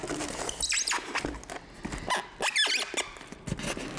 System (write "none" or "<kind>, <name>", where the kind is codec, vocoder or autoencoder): none